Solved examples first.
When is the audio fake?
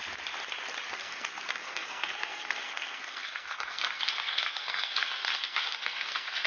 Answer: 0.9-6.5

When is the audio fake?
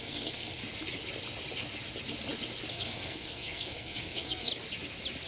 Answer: 0.0-0.6; 2.7-4.5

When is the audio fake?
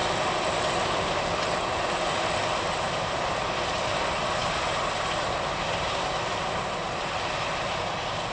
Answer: none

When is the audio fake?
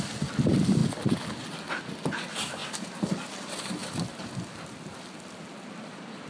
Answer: none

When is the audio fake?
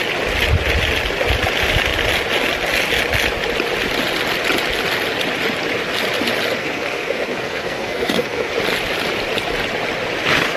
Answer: 6.6-8.5